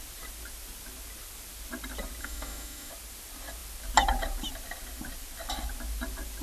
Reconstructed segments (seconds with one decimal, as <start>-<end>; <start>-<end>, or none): 2.2-2.9

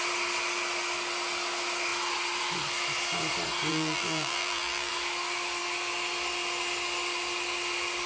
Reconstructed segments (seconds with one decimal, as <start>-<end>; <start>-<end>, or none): 3.7-4.9

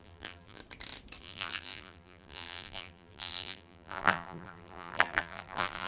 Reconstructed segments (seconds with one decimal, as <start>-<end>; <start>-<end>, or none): 0.0-0.6; 1.2-5.9

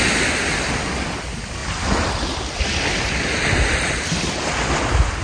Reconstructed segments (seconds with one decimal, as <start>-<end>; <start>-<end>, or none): none

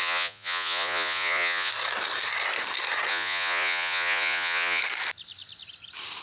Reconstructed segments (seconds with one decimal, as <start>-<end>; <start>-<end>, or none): 0.0-1.7; 3.1-4.8

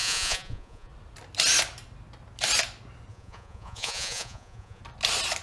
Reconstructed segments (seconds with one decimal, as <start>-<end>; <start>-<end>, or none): 0.0-0.9; 3.1-4.8